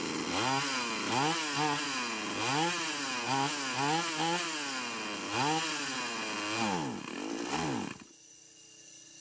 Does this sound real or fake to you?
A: real